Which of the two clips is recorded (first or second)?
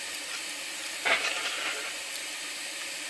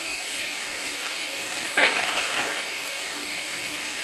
first